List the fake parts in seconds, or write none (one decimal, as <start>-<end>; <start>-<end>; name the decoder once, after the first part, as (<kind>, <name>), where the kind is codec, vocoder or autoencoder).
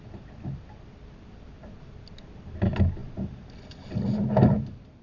none